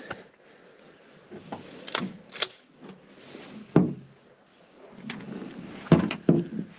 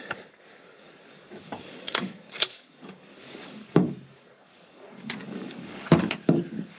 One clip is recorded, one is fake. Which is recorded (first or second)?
first